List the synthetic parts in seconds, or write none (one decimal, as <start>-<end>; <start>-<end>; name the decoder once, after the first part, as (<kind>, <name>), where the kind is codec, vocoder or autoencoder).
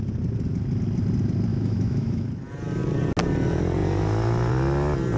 1.5-2.3 (autoencoder, DAC-VAE)